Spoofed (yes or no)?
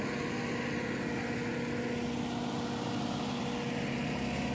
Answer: no